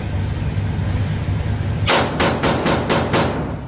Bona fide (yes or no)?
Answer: yes